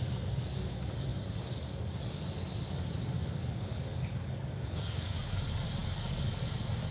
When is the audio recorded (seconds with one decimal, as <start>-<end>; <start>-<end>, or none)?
none